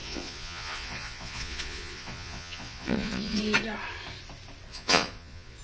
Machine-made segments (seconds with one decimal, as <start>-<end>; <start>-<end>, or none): 0.0-3.4; 4.7-5.6